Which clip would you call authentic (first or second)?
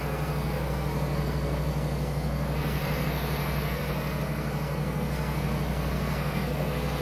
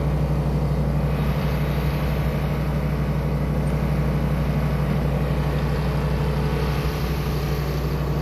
second